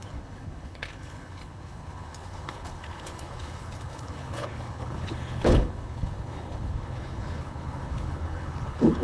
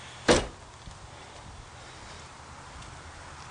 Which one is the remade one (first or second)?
first